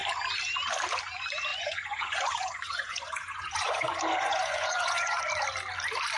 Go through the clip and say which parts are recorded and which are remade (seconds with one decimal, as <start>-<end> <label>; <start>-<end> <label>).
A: 0.0-1.5 recorded; 1.5-5.2 remade; 5.2-6.2 recorded

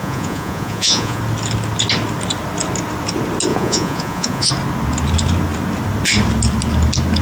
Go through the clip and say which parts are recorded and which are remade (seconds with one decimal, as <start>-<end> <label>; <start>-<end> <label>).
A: 0.0-1.2 remade; 1.2-3.5 recorded; 3.5-4.5 remade; 4.5-7.2 recorded

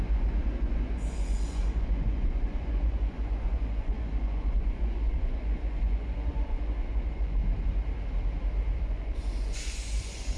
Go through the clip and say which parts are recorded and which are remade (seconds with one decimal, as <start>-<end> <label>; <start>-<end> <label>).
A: 0.0-7.4 remade; 7.4-8.8 recorded; 8.8-10.4 remade

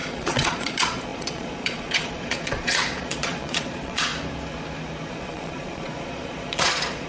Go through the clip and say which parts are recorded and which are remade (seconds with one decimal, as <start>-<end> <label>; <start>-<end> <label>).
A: 0.0-4.1 remade; 4.1-5.1 recorded; 5.1-7.1 remade

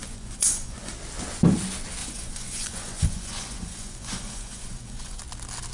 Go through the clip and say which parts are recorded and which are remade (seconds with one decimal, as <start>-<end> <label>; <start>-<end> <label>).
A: 0.0-0.9 remade; 0.9-2.0 recorded; 2.0-5.2 remade; 5.2-5.7 recorded

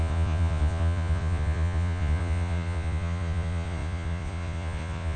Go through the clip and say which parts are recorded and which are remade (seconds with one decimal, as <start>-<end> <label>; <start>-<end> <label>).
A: 0.0-5.2 remade

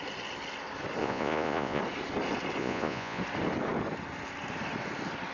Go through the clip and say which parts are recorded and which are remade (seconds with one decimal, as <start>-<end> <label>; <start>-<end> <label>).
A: 0.0-1.0 recorded; 1.0-1.8 remade; 1.8-2.6 recorded; 2.6-3.2 remade; 3.2-5.3 recorded